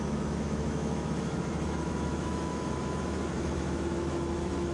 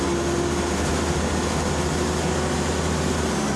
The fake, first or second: first